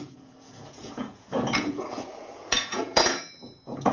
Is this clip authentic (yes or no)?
no